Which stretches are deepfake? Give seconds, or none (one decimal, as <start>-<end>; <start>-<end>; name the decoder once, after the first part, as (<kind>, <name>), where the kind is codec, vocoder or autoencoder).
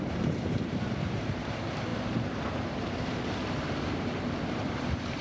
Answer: 0.0-5.2 (vocoder, BigVGAN v2)